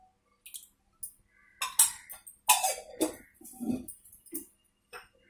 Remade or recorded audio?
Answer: recorded